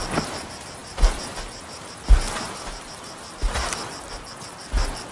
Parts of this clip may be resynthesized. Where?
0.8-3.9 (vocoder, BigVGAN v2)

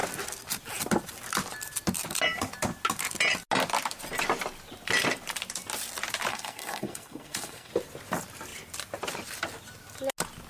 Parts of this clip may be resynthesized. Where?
6.3-7.7 (codec, SNAC)